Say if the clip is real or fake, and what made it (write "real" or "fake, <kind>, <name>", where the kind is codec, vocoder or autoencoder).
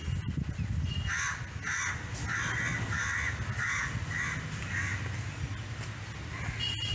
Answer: real